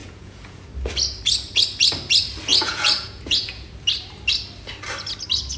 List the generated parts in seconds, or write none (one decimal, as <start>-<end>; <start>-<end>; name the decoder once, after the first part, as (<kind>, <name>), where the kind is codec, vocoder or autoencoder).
0.0-0.7 (vocoder, Vocos); 2.5-3.7